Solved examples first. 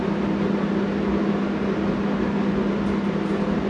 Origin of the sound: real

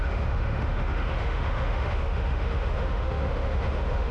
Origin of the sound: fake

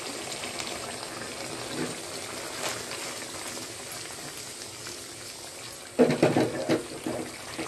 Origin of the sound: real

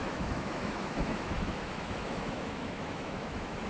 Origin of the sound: fake